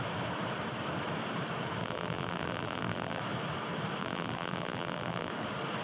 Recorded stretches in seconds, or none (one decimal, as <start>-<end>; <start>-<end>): 0.0-1.8; 3.2-4.0; 5.3-5.8